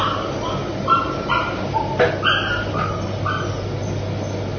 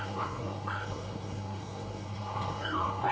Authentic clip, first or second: first